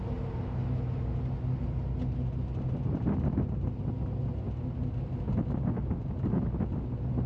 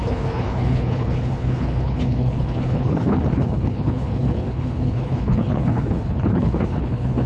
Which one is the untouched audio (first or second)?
first